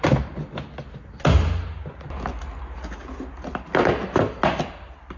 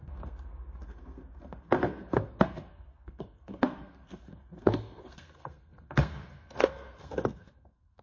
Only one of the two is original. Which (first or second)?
first